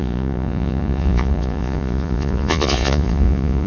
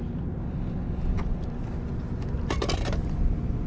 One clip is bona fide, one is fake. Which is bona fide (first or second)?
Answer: second